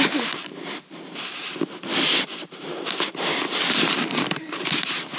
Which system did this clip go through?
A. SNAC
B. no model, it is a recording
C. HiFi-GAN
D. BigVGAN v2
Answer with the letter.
D